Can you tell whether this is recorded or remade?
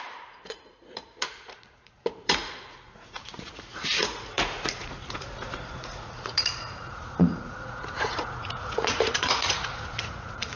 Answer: remade